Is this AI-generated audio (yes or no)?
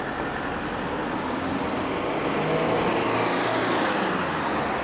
no